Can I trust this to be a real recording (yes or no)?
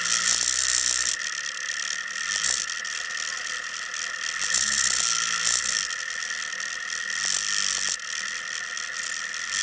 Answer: yes